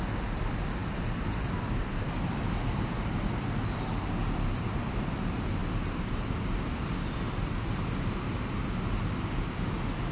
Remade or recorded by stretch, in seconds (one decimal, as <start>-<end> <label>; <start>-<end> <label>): 0.0-10.1 recorded